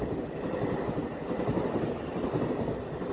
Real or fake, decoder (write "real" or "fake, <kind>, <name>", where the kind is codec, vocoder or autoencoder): real